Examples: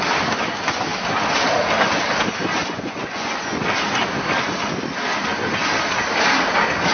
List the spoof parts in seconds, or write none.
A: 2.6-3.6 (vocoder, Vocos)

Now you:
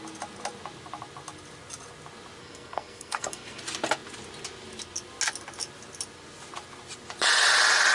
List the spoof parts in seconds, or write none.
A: 2.4-3.6 (codec, SNAC)

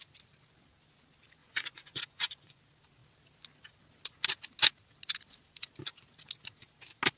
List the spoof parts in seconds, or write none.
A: 1.4-2.6 (vocoder, Vocos)